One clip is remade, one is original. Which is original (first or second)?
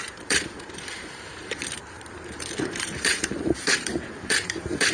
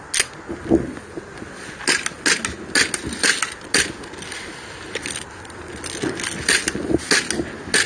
second